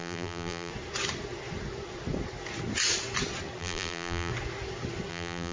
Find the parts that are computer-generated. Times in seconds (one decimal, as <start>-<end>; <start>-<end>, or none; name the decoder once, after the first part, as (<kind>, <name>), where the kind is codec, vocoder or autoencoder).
0.0-0.7 (vocoder, BigVGAN v2); 3.6-4.3; 5.1-5.5